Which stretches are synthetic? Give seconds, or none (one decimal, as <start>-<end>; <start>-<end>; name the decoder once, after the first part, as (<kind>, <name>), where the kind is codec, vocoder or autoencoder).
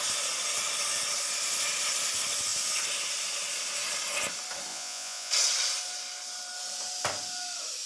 4.7-5.3 (vocoder, Vocos)